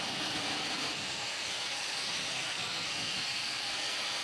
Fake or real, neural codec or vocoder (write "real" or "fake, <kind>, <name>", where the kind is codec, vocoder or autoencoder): fake, codec, SNAC